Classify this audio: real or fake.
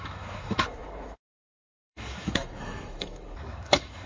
fake